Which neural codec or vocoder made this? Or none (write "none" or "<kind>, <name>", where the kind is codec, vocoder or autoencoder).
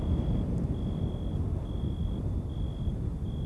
none